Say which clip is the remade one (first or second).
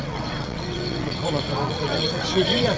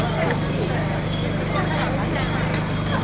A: first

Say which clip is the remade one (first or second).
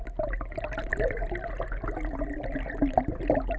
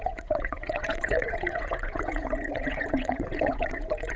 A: second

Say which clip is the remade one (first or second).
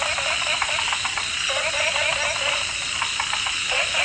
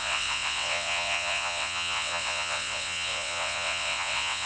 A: second